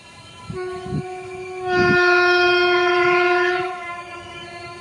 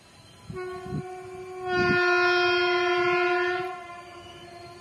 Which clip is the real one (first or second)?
second